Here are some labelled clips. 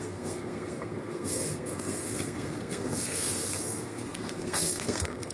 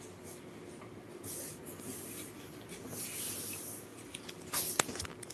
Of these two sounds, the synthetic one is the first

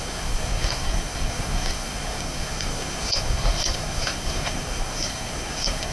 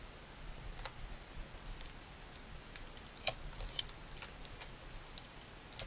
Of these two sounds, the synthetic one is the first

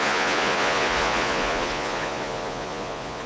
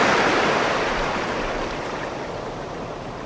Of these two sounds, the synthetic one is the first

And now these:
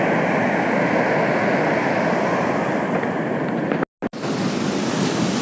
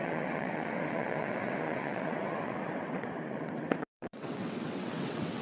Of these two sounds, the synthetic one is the second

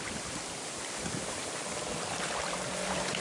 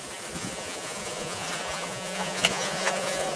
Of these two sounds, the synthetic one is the second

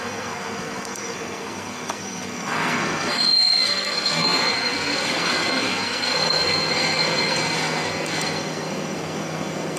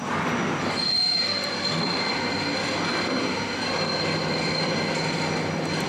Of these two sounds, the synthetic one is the first